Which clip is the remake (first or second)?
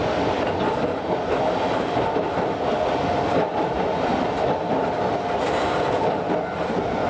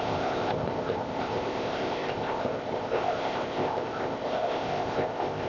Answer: second